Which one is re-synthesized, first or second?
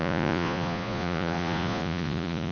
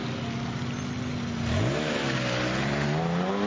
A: first